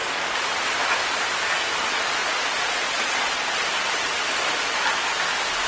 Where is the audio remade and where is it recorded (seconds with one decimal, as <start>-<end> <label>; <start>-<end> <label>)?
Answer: 0.0-2.2 recorded; 2.2-3.3 remade; 3.3-5.7 recorded